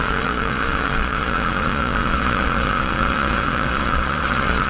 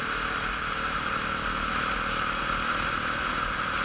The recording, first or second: second